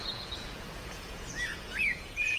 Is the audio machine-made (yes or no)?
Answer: yes